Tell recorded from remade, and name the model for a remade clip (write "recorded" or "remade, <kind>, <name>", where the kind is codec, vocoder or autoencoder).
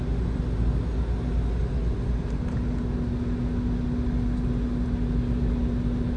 recorded